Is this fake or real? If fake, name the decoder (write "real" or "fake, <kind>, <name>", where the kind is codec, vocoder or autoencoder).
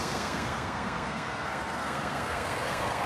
fake, codec, SNAC